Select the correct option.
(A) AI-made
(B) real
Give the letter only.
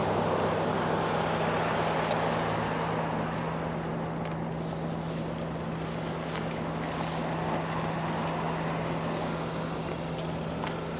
B